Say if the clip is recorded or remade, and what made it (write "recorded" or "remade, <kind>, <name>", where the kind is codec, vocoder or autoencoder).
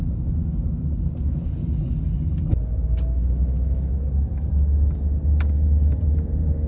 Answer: recorded